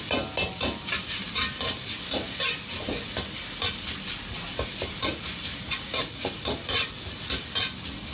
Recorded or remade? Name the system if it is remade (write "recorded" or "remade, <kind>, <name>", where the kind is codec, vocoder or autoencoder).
recorded